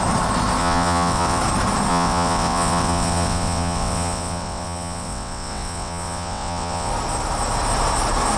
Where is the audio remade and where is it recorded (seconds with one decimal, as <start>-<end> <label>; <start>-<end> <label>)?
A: 0.0-0.6 recorded; 0.6-1.4 remade; 1.4-1.9 recorded; 1.9-6.9 remade; 6.9-8.4 recorded